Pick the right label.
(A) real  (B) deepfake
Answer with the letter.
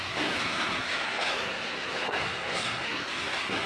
B